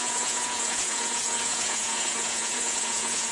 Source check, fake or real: fake